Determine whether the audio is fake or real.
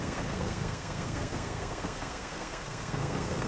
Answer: fake